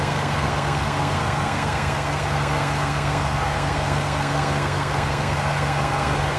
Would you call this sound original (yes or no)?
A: no